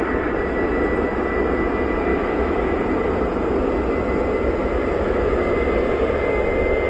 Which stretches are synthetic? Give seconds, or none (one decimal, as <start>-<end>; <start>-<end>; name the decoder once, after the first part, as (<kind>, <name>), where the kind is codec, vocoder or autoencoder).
2.1-2.6 (autoencoder, DAC-VAE); 4.6-5.6